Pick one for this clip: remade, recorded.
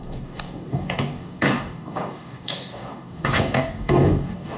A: remade